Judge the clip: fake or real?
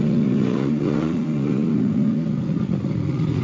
fake